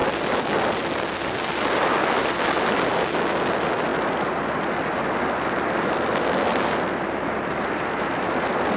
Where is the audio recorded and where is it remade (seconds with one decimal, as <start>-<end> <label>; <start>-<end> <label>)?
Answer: 0.0-8.8 recorded